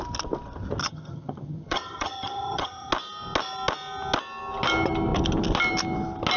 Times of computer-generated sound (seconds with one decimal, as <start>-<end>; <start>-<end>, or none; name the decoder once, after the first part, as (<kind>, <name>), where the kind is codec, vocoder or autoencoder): 0.8-2.9 (vocoder, HiFi-GAN)